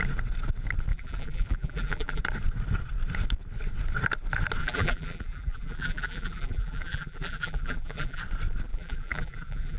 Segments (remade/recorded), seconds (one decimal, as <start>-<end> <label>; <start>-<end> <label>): 0.0-0.9 recorded; 0.9-2.2 remade; 2.2-4.6 recorded; 4.6-8.2 remade; 8.2-8.7 recorded; 8.7-9.8 remade